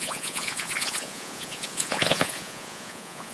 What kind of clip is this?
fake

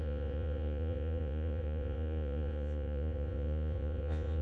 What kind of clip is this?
fake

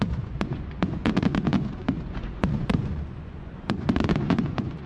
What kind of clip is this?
fake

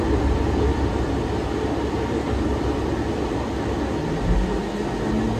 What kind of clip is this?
real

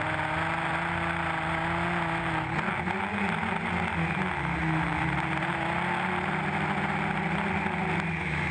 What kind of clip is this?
real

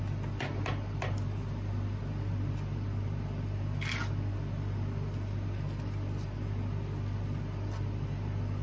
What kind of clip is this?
real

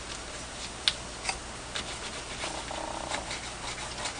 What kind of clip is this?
real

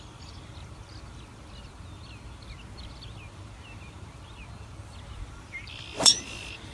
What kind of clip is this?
real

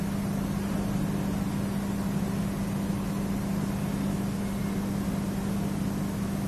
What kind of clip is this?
real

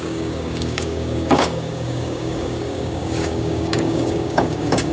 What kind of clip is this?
fake